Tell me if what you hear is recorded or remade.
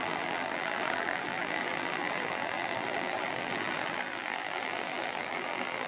remade